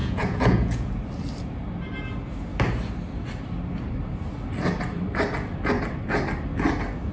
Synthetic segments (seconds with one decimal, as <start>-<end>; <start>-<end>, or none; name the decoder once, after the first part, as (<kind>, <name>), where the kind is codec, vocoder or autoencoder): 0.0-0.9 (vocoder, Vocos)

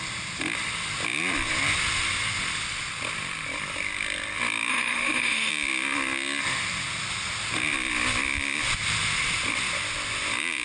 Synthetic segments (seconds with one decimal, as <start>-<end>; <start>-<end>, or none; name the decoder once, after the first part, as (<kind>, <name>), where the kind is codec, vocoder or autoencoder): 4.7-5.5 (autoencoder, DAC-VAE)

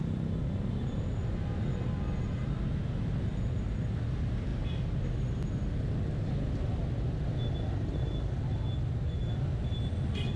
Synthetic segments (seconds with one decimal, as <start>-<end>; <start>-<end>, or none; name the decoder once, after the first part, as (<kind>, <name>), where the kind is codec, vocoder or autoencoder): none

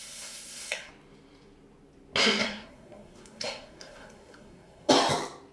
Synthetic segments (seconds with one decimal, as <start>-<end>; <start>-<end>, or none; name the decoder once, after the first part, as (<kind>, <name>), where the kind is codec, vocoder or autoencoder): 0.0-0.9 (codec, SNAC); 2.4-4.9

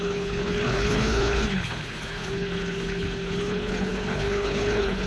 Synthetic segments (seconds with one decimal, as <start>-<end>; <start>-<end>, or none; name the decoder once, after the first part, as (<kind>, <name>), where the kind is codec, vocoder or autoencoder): 0.0-5.1 (codec, HILCodec)

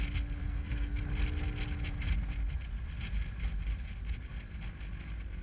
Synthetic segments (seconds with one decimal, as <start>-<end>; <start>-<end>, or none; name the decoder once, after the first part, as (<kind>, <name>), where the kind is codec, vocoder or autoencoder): 0.4-1.0 (codec, SNAC)